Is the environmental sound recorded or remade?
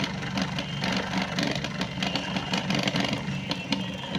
recorded